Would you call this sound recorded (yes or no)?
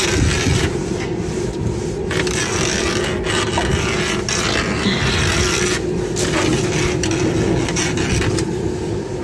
yes